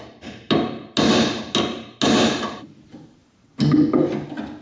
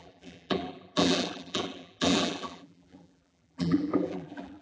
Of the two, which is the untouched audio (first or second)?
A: first